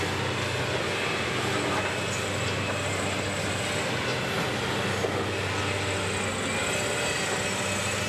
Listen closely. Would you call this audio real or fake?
real